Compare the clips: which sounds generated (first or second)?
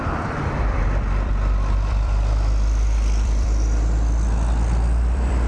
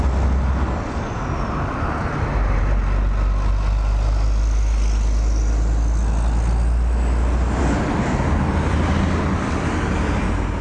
first